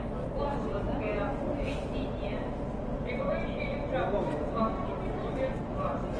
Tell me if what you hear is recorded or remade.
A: recorded